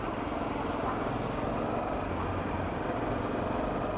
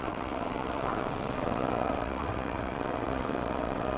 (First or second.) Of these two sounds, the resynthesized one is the second